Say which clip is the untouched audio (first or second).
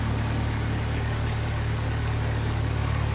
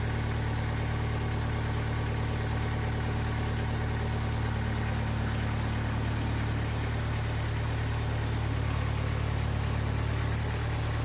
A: second